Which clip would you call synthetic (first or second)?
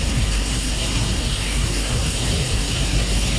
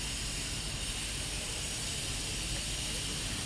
first